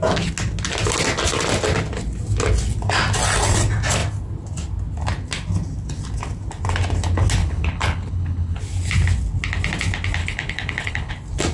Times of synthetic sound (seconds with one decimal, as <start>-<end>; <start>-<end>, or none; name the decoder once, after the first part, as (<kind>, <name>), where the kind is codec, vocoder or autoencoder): 7.4-8.6 (codec, HILCodec); 10.2-11.1